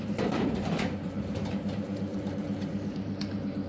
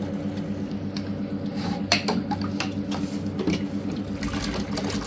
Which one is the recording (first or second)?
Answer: second